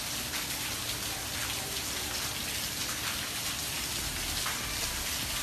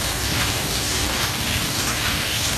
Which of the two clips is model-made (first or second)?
second